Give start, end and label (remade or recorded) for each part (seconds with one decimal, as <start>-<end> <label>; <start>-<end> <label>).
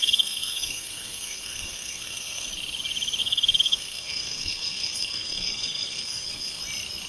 0.0-2.5 remade; 2.5-3.2 recorded; 3.2-6.6 remade; 6.6-7.1 recorded